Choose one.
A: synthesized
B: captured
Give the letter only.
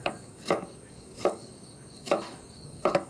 A